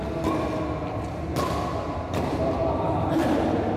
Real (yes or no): yes